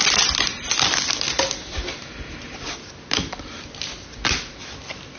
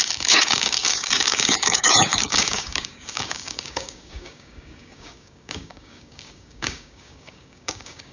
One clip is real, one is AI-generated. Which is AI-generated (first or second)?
second